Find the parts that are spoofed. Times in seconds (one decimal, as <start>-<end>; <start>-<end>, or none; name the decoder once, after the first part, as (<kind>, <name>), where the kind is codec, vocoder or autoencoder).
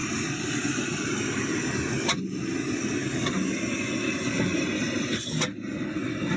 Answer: 4.5-5.1 (vocoder, BigVGAN v2)